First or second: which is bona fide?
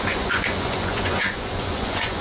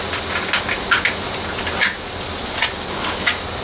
second